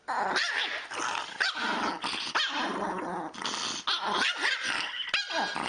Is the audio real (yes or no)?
yes